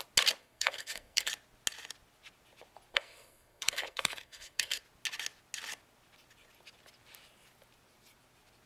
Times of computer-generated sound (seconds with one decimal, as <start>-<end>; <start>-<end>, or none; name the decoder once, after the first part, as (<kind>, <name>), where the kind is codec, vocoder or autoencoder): 0.4-1.3 (codec, SNAC); 2.9-4.8